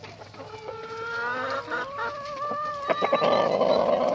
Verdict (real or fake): real